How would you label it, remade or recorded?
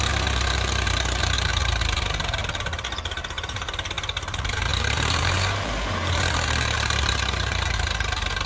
remade